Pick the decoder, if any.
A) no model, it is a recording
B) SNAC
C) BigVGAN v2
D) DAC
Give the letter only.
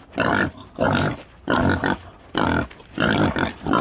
A